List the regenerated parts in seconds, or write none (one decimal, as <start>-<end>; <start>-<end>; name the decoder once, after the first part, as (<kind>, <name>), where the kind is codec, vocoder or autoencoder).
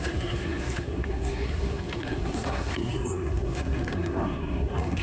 0.0-5.0 (codec, SNAC)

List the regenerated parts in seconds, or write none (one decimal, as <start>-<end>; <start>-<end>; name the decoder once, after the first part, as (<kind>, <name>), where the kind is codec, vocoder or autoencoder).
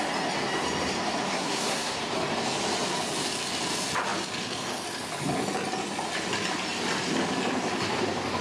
1.3-2.0 (codec, SNAC)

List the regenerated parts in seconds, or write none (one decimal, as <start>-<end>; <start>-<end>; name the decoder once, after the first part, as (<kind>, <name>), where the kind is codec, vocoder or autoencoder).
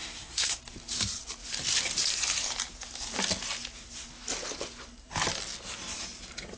0.0-0.6 (codec, SNAC)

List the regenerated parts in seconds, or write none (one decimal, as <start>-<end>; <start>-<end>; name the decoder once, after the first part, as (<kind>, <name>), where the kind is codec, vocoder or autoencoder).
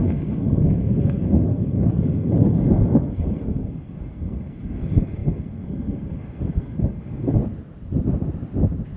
0.0-7.4 (codec, SNAC)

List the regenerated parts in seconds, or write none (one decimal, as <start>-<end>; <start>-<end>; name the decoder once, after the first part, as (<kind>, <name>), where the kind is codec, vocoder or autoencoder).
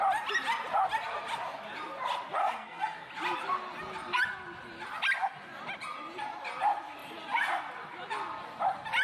2.4-3.1 (codec, SNAC)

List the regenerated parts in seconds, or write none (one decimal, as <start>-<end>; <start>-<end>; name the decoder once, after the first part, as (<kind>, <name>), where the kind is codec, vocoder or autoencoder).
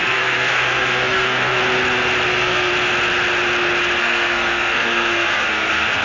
0.0-1.6 (codec, SNAC); 2.3-2.7; 4.0-6.0